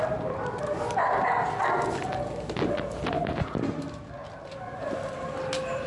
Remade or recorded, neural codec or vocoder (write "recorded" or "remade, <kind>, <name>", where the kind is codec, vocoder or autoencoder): recorded